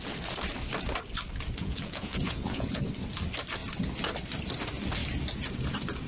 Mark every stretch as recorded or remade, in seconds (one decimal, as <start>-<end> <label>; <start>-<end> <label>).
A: 0.0-1.6 recorded; 1.6-2.8 remade; 2.8-6.1 recorded